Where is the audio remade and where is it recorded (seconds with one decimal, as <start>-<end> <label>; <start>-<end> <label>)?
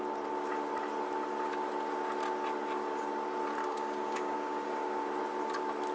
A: 0.0-3.6 recorded; 3.6-5.0 remade; 5.0-5.9 recorded